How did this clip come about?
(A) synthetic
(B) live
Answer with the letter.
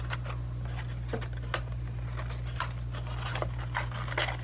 B